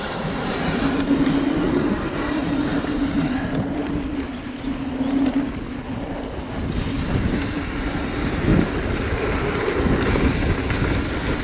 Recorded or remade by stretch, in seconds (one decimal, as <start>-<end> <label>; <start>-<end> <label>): 0.0-11.4 recorded